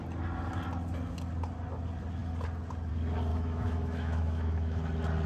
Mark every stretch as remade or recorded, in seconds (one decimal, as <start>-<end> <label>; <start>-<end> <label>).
0.0-3.3 recorded; 3.3-4.8 remade; 4.8-5.3 recorded

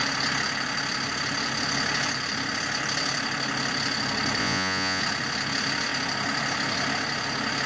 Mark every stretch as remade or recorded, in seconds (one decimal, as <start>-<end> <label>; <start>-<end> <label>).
0.0-4.4 recorded; 4.4-5.0 remade; 5.0-7.7 recorded